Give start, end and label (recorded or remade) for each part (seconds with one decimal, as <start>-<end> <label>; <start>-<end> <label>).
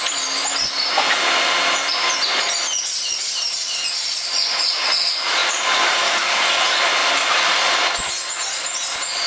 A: 0.0-9.3 recorded